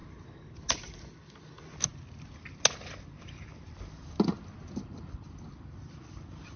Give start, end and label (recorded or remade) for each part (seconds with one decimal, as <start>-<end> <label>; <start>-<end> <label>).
0.0-6.6 recorded